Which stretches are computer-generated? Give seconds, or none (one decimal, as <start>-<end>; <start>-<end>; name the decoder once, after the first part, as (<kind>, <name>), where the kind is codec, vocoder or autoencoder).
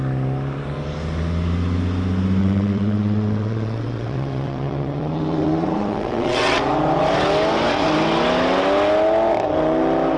2.4-6.6 (vocoder, WaveNeXt)